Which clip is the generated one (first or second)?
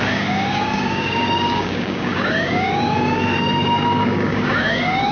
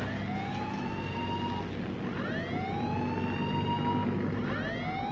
first